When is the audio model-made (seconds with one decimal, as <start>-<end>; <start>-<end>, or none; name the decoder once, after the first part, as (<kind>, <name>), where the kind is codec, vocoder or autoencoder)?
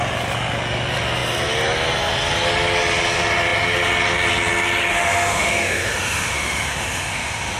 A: 4.9-7.6 (autoencoder, DAC-VAE)